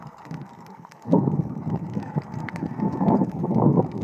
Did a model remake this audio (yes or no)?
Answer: yes